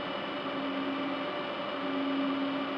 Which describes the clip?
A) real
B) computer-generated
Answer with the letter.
A